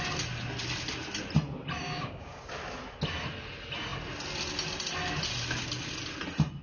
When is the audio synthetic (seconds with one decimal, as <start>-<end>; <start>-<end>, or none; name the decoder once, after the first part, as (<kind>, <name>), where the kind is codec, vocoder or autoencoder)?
1.8-2.4 (codec, DAC)